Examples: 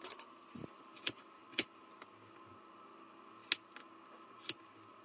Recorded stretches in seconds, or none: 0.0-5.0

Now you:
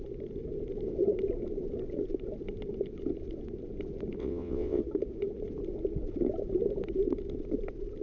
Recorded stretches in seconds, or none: 0.0-4.2; 4.8-8.0

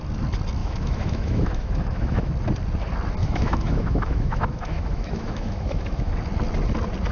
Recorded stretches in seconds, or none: 0.0-0.6; 2.3-3.2; 6.1-7.1

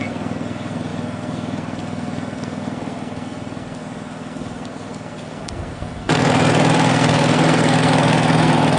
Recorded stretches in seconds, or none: none

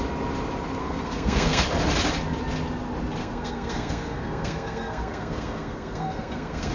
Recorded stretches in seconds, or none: 0.0-0.8; 1.6-3.2

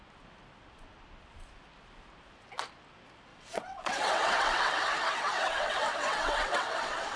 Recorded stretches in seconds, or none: 0.0-3.3

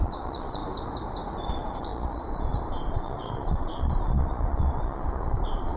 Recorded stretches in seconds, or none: 0.6-1.5

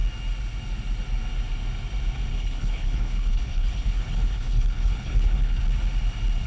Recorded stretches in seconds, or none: 0.0-2.3; 5.6-6.5